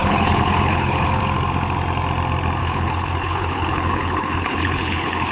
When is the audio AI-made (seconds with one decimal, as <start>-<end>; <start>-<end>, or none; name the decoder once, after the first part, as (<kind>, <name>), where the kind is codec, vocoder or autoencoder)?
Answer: 0.0-1.2 (codec, HILCodec); 2.6-5.3